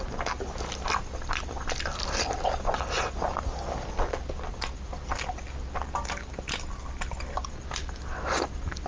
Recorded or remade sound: recorded